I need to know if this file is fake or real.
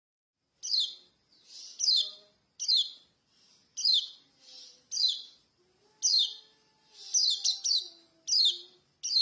real